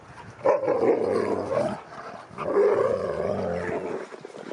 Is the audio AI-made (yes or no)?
no